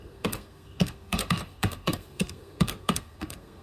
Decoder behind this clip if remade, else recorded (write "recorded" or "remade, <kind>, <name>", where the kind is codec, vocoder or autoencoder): remade, codec, SNAC